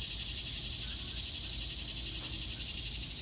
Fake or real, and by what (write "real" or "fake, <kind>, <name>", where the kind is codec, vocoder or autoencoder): real